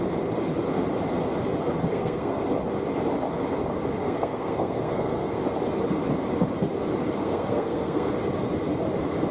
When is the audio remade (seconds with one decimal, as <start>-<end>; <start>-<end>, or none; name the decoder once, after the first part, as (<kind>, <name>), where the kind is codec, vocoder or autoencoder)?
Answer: 1.9-2.4 (codec, SNAC); 4.0-5.4; 7.2-8.1